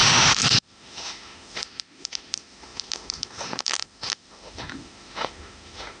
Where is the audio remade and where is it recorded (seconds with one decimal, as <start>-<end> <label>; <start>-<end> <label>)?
0.0-6.0 remade